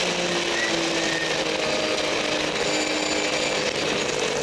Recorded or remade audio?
recorded